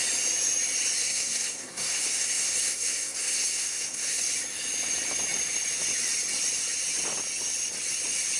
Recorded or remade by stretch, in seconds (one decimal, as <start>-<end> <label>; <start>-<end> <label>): 0.0-1.0 recorded; 1.0-4.2 remade; 4.2-8.4 recorded